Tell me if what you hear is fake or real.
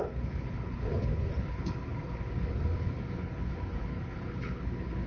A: fake